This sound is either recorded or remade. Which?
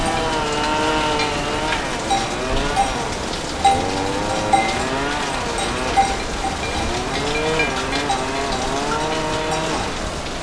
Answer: recorded